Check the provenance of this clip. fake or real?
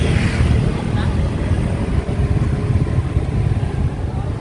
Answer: real